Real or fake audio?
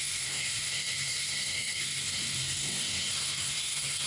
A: fake